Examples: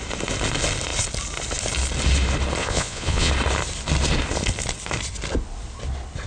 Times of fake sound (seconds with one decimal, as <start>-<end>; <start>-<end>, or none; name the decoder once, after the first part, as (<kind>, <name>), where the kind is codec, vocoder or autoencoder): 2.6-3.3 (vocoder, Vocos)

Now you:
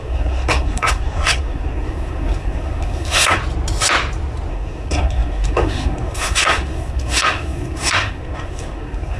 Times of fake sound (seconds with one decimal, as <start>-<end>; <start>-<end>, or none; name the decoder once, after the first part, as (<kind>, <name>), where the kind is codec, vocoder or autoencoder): 0.0-3.4 (codec, SNAC); 4.5-9.2

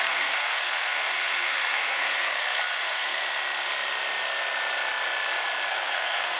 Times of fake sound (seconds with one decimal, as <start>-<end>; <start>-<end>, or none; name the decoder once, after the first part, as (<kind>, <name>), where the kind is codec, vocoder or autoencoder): 0.0-3.2 (codec, SNAC); 5.7-6.4

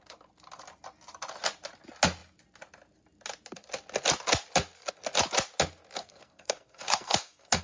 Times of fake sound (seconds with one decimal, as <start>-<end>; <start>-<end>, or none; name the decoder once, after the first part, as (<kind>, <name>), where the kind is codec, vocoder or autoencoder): 6.0-7.6 (codec, SNAC)

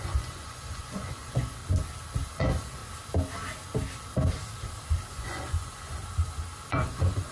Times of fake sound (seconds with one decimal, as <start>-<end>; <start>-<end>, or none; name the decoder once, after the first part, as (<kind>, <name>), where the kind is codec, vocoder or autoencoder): 0.0-1.6 (vocoder, Vocos); 2.3-2.8; 5.1-6.0; 6.7-7.3